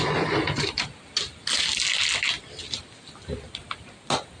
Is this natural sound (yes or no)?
yes